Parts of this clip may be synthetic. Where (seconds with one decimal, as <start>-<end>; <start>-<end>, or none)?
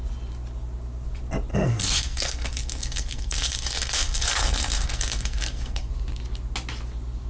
1.5-5.9